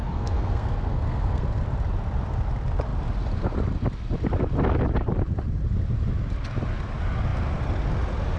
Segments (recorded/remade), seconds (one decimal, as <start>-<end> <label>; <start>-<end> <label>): 0.0-1.6 remade; 1.6-8.4 recorded

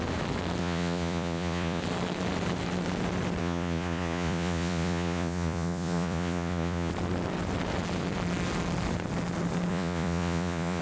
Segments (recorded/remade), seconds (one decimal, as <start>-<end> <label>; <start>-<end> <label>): 0.0-0.6 recorded; 0.6-1.8 remade; 1.8-3.4 recorded; 3.4-6.9 remade; 6.9-9.7 recorded; 9.7-10.8 remade

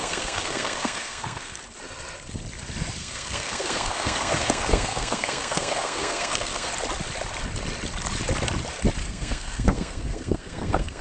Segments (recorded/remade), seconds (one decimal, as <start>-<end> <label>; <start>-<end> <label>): 0.0-1.6 remade; 1.6-3.0 recorded; 3.0-6.7 remade; 6.7-9.0 recorded; 9.0-11.0 remade

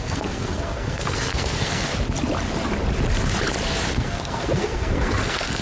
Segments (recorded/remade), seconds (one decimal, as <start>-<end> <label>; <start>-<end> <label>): 0.0-1.9 remade; 1.9-3.9 recorded; 3.9-5.6 remade